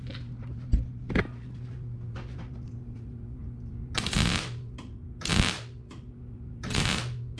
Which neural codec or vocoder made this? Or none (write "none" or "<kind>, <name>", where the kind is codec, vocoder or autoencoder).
none